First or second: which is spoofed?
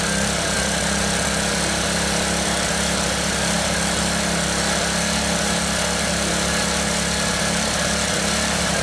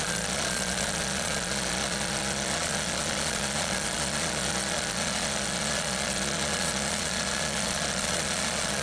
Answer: second